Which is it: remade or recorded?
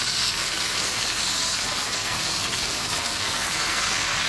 remade